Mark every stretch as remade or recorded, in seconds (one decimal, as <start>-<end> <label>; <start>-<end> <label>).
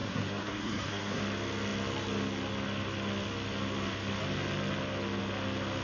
0.0-1.2 remade; 1.2-5.8 recorded